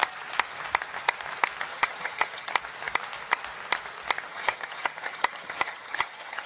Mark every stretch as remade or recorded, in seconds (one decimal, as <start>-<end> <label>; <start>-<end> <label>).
0.0-1.7 recorded; 1.7-2.5 remade; 2.5-4.3 recorded; 4.3-6.5 remade